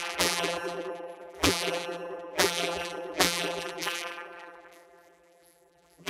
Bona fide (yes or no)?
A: no